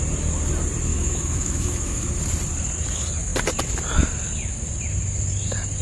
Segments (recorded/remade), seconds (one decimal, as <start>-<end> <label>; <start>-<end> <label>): 0.0-0.9 recorded; 0.9-2.1 remade; 2.1-5.8 recorded